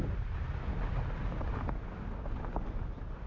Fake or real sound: real